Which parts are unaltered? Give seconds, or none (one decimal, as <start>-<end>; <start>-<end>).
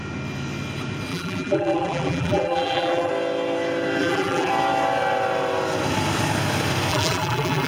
0.0-1.1; 3.1-4.0; 4.5-6.9